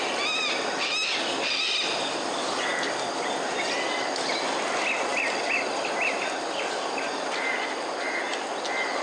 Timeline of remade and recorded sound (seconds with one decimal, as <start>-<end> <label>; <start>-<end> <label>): 0.0-9.0 recorded